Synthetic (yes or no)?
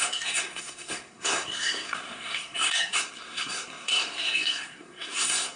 yes